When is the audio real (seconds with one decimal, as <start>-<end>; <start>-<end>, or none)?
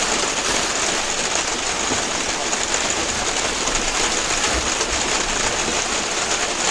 0.0-6.7